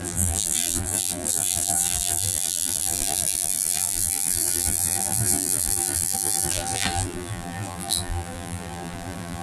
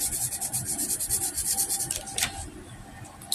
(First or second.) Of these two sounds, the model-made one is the first